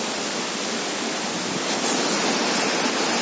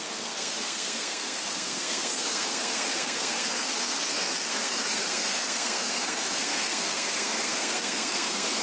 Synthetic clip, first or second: second